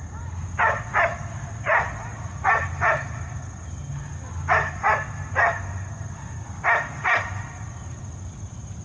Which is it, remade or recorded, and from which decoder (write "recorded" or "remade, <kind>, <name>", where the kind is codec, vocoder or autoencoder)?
recorded